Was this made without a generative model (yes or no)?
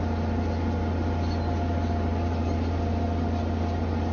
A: yes